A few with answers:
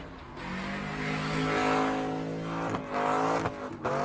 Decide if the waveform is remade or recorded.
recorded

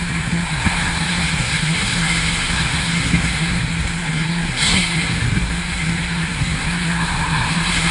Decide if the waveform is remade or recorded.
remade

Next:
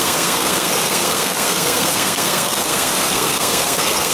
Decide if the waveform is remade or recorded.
remade